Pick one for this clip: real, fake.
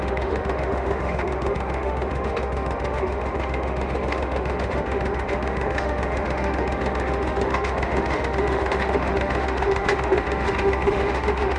fake